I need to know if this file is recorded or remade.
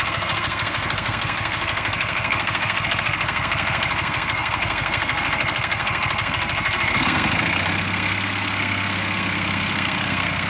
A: remade